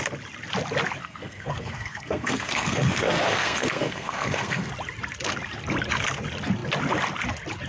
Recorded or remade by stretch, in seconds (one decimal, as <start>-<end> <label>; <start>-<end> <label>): 0.0-1.0 recorded; 1.0-4.7 remade; 4.7-7.7 recorded